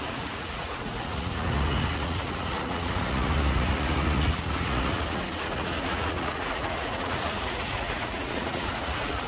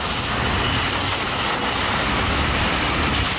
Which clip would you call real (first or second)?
second